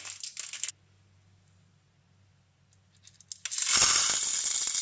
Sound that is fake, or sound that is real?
real